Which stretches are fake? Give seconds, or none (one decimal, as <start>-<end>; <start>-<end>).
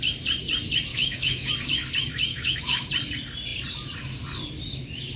0.9-1.5; 2.3-2.9